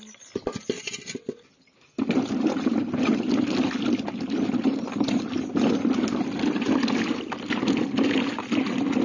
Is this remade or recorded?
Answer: recorded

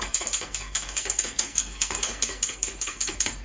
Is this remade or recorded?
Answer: remade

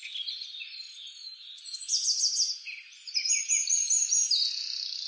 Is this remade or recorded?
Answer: recorded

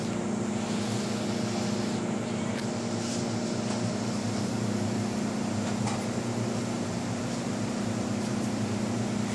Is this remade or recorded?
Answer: recorded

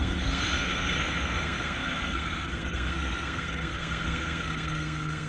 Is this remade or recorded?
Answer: remade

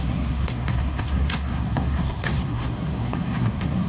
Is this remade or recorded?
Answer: remade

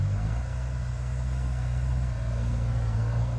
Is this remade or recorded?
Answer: remade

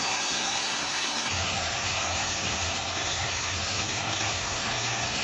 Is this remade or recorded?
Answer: remade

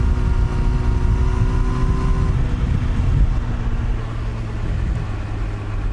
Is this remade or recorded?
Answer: recorded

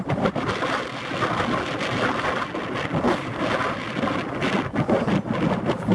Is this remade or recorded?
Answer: recorded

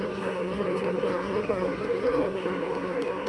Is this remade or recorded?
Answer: remade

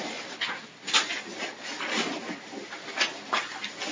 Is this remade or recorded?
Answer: recorded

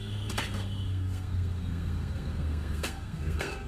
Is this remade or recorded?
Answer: remade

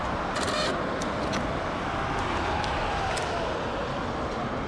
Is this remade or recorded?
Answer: recorded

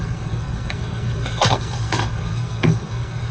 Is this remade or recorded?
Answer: remade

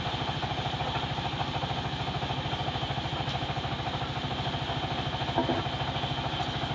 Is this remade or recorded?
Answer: recorded